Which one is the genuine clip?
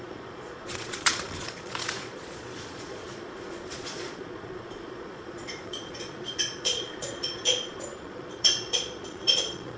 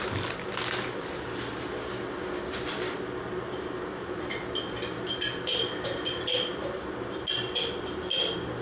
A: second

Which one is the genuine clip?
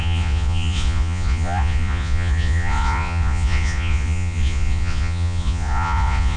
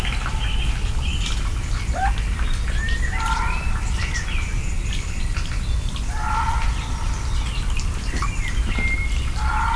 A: second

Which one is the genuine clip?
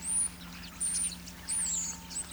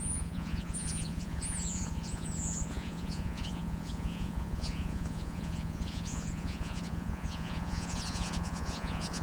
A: first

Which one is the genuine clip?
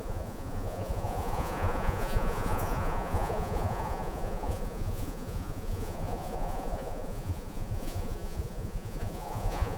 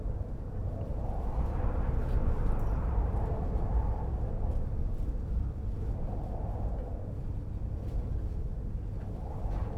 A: second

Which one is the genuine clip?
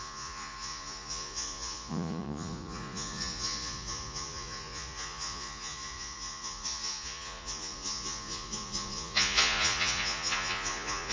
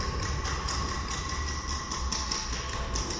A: second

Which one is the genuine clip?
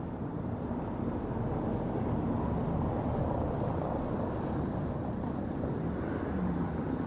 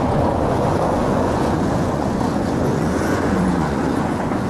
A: first